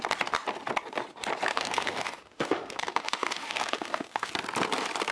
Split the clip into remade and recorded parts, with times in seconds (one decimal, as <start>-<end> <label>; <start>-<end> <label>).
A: 0.0-1.5 recorded; 1.5-4.3 remade; 4.3-5.1 recorded